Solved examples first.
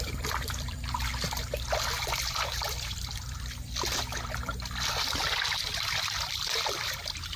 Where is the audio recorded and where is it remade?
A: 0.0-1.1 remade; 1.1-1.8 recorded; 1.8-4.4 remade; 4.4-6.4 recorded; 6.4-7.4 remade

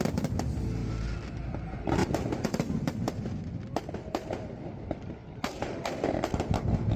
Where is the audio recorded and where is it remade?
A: 0.0-5.2 recorded; 5.2-6.4 remade; 6.4-7.0 recorded

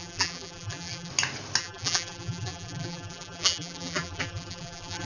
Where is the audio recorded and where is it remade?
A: 0.0-1.1 remade; 1.1-1.6 recorded; 1.6-5.1 remade

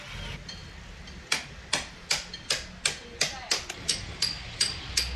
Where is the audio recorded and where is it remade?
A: 0.0-5.2 recorded

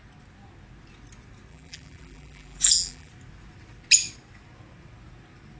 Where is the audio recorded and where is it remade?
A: 0.0-1.5 recorded; 1.5-3.1 remade; 3.1-5.6 recorded